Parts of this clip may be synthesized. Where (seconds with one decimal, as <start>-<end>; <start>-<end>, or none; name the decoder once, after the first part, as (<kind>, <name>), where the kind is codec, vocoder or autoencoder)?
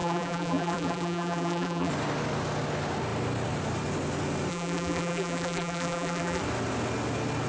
0.0-1.9 (vocoder, BigVGAN v2); 4.5-6.4